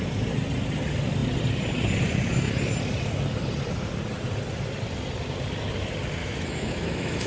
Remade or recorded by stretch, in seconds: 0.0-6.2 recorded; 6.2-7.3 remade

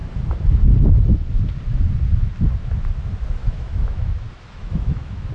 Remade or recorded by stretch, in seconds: 0.0-3.4 recorded; 3.4-5.3 remade

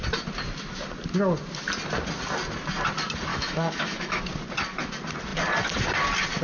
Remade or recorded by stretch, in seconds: 0.0-3.3 recorded; 3.3-4.2 remade; 4.2-6.4 recorded

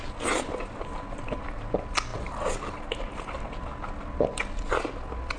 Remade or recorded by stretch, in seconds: 0.0-5.4 recorded

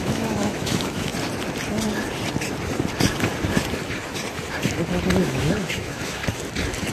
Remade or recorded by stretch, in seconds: 0.0-1.1 remade; 1.1-5.2 recorded; 5.2-6.2 remade; 6.2-6.9 recorded

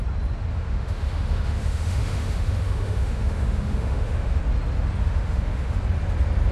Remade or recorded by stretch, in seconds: 0.0-0.5 recorded; 0.5-4.4 remade; 4.4-5.0 recorded; 5.0-5.8 remade; 5.8-6.5 recorded